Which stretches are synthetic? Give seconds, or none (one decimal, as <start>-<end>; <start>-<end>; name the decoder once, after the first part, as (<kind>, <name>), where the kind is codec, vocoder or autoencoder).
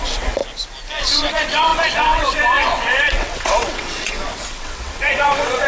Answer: 0.0-0.4 (vocoder, WaveNeXt); 1.0-5.7